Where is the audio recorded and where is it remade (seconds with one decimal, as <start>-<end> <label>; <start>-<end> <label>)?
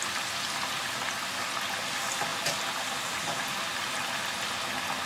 0.0-2.3 recorded; 2.3-3.4 remade; 3.4-5.1 recorded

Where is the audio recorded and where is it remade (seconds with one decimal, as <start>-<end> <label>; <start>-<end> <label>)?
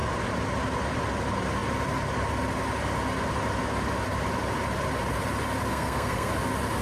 0.0-5.7 recorded; 5.7-6.3 remade; 6.3-6.8 recorded